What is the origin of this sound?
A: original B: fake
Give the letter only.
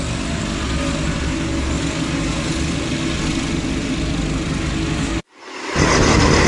A